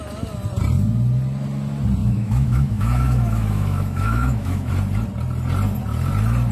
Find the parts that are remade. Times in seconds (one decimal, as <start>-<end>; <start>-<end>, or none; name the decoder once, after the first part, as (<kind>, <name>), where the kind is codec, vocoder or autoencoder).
2.0-4.7 (autoencoder, DAC-VAE)